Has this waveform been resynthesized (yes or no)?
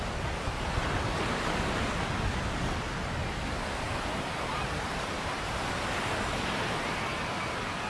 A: no